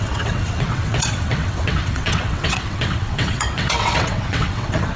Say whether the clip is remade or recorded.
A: remade